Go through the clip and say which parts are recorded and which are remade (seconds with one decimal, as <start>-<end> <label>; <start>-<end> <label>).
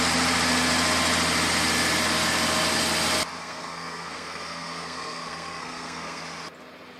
0.0-3.4 recorded; 3.4-6.2 remade; 6.2-7.0 recorded